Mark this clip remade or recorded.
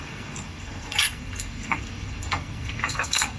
remade